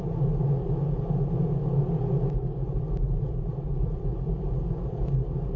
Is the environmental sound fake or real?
real